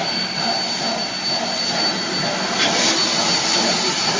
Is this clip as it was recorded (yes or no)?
yes